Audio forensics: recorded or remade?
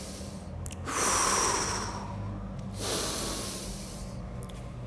recorded